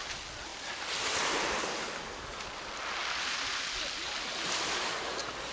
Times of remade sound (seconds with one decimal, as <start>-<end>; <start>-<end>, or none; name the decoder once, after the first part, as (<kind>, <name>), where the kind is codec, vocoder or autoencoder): none